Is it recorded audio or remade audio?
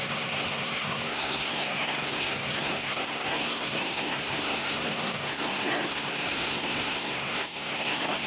remade